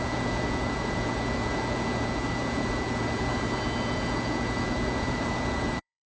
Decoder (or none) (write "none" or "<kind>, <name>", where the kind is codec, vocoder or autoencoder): vocoder, Vocos